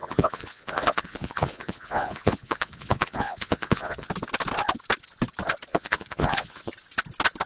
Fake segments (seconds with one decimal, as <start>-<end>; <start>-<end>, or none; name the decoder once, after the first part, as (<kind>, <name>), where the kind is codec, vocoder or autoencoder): 0.0-4.1 (vocoder, Vocos); 5.7-6.7